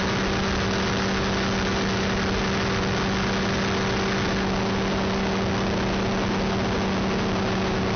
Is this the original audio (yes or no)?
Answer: yes